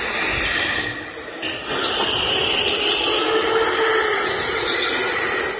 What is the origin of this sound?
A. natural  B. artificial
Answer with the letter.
A